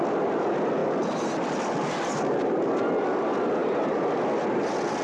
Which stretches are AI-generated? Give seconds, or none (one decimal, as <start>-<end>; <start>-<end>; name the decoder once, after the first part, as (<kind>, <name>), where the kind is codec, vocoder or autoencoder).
none